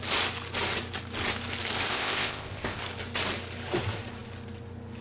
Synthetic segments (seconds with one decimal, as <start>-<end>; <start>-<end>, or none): 1.9-2.8